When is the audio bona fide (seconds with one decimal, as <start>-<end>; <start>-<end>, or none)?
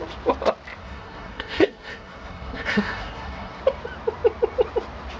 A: 0.0-0.8; 3.6-5.2